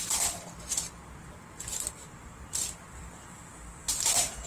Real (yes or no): no